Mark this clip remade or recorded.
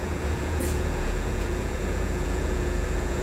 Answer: remade